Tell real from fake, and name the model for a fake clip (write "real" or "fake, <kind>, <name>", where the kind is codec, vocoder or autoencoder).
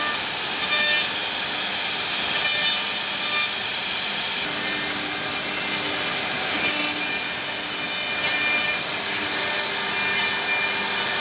real